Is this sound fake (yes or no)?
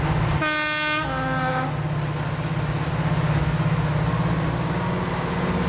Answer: no